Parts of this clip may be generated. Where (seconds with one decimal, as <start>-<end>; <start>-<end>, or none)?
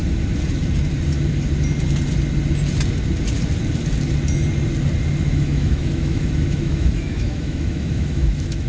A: 5.2-8.7